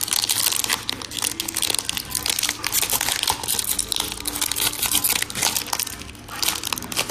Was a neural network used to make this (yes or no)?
no